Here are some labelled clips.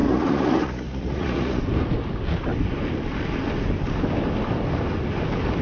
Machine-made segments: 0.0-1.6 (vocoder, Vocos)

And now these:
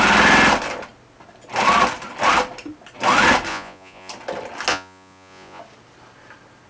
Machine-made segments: 3.5-4.1 (vocoder, Vocos); 4.7-5.6

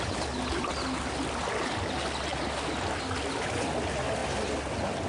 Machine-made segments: none

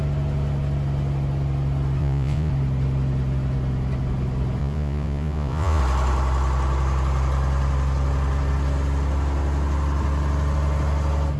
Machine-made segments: 2.0-2.5 (vocoder, Vocos); 4.6-5.8

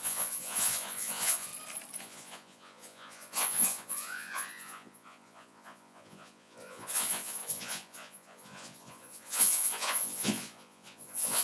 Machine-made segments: 0.0-1.5 (vocoder, Vocos); 2.0-11.4

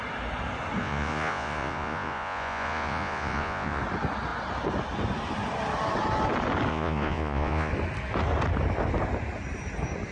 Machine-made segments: 0.8-3.8 (vocoder, Vocos); 6.7-7.7

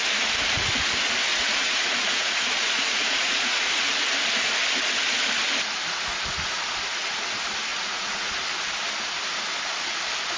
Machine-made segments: 1.3-3.8 (vocoder, Vocos); 7.7-8.3

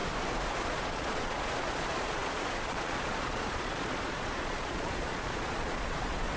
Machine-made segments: 0.6-6.4 (vocoder, Vocos)